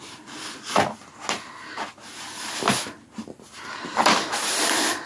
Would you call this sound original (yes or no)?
yes